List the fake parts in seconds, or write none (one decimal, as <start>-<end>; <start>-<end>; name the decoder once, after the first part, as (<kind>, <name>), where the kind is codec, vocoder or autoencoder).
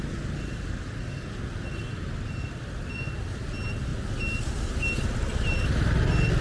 none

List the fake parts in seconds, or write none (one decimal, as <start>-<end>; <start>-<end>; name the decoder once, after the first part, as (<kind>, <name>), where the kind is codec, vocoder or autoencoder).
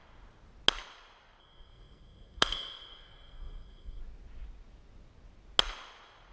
1.4-4.0 (codec, SNAC)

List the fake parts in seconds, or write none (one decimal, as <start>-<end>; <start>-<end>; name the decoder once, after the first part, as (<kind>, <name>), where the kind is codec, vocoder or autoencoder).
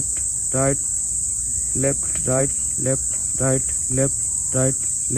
none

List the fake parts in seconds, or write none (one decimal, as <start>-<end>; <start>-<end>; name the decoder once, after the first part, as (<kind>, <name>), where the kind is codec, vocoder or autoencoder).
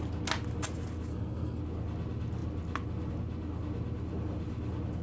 1.1-1.6 (codec, SNAC)